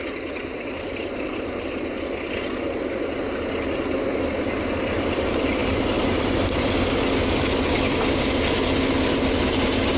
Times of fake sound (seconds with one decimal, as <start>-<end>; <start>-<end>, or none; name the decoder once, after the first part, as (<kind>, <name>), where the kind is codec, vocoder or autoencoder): 0.5-1.7 (vocoder, BigVGAN v2); 5.6-6.7